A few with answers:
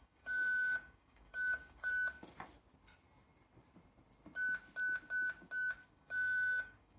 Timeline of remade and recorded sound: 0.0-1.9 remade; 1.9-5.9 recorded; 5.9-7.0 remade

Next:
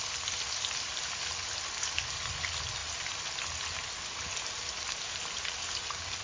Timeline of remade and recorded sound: 0.0-6.2 recorded

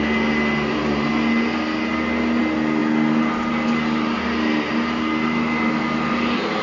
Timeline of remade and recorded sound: 0.0-6.6 recorded

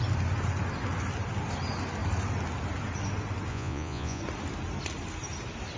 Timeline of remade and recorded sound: 0.0-3.5 recorded; 3.5-4.2 remade; 4.2-5.8 recorded

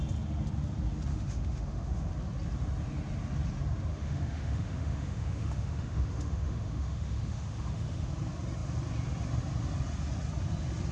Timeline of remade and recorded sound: 0.0-1.1 recorded; 1.1-2.1 remade; 2.1-3.9 recorded; 3.9-8.1 remade; 8.1-10.9 recorded

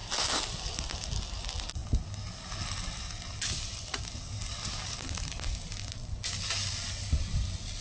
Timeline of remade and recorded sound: 0.0-7.8 recorded

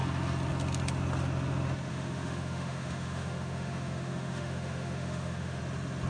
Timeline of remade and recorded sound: 0.0-1.9 recorded; 1.9-5.6 remade; 5.6-6.1 recorded

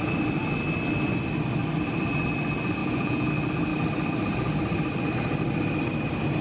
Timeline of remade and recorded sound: 0.0-2.8 recorded; 2.8-3.3 remade; 3.3-6.4 recorded